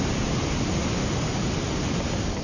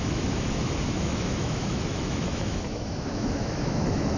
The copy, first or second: second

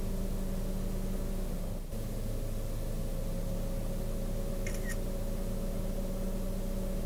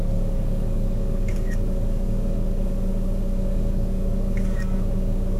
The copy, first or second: second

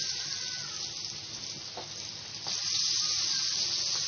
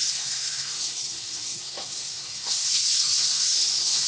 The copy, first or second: second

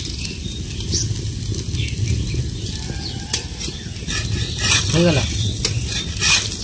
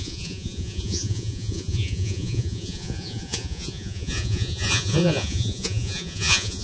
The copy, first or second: second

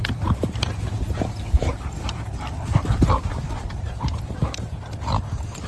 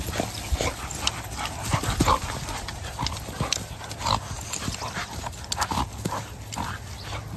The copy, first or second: first